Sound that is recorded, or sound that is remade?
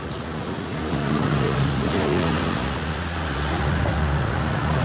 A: remade